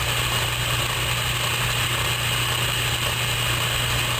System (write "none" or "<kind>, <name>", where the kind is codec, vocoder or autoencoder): none